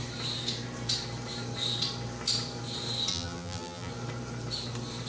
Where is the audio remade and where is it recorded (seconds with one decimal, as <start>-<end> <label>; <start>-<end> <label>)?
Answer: 0.0-3.1 recorded; 3.1-3.9 remade; 3.9-5.1 recorded